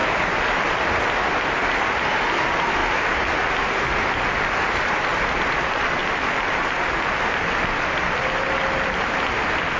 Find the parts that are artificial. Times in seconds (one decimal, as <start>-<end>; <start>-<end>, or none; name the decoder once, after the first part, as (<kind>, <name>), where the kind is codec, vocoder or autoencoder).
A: none